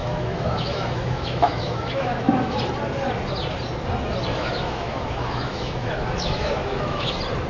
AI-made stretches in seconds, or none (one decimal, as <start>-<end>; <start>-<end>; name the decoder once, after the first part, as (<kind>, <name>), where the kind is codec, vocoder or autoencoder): 0.0-2.6 (autoencoder, DAC-VAE); 4.3-7.1